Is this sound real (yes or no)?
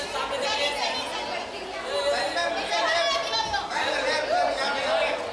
yes